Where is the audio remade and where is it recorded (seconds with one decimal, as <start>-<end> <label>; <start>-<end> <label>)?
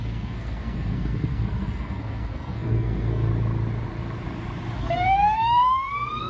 0.0-3.3 remade; 3.3-4.8 recorded; 4.8-6.3 remade